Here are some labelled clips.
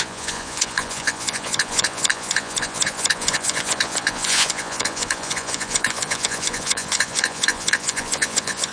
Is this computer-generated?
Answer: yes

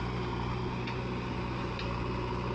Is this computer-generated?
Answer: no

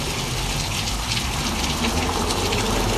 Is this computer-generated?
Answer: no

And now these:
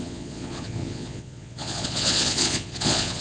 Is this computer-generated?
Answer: yes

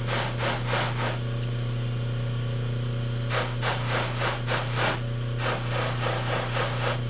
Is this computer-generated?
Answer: no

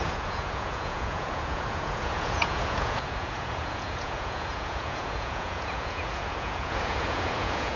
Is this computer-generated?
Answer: yes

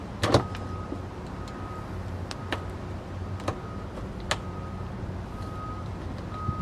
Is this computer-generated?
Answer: no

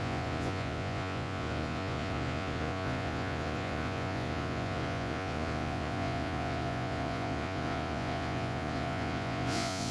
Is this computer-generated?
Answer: yes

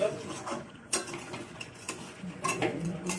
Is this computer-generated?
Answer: yes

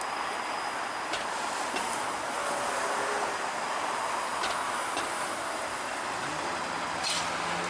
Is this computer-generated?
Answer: no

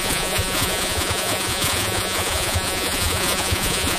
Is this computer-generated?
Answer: yes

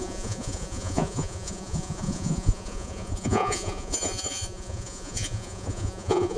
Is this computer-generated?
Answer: yes